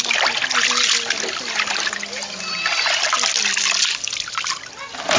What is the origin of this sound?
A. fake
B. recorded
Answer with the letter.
B